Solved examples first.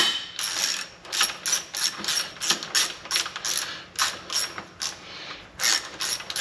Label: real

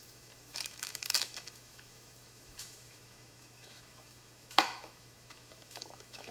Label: fake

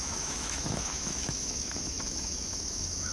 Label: fake